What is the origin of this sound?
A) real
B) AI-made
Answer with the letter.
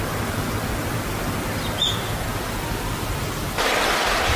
B